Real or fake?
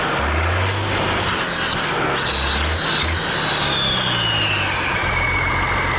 real